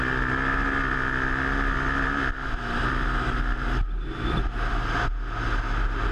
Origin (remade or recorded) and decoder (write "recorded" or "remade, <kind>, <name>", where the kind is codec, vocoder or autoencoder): recorded